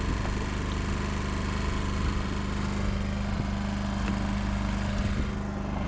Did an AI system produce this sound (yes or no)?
no